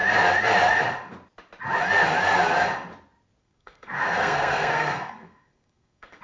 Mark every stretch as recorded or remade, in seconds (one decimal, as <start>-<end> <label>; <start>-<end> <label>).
0.0-3.4 recorded; 3.4-6.2 remade